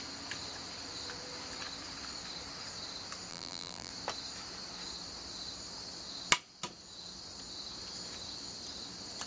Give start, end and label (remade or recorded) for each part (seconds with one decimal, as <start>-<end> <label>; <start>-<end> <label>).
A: 0.0-3.3 recorded; 3.3-3.9 remade; 3.9-9.3 recorded

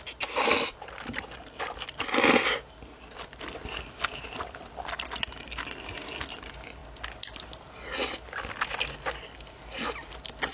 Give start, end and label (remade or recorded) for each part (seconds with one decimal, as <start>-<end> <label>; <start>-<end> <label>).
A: 0.0-10.5 recorded

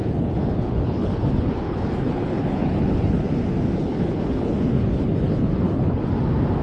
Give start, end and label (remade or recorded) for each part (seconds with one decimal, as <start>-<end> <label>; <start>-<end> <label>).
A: 0.0-3.4 remade; 3.4-3.8 recorded; 3.8-6.0 remade; 6.0-6.6 recorded

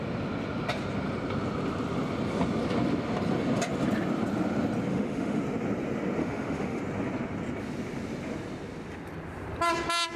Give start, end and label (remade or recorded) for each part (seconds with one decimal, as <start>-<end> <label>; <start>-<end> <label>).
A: 0.0-4.9 recorded; 4.9-5.4 remade; 5.4-6.2 recorded; 6.2-6.8 remade; 6.8-10.2 recorded

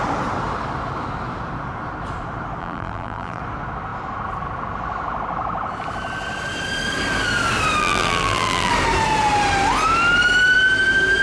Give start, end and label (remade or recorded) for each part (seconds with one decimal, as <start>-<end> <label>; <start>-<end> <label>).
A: 0.0-2.6 recorded; 2.6-3.4 remade; 3.4-7.8 recorded; 7.8-8.7 remade; 8.7-11.2 recorded

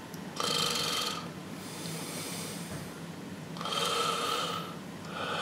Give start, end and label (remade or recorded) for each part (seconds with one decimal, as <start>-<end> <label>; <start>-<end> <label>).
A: 0.0-1.4 recorded; 1.4-4.6 remade; 4.6-5.4 recorded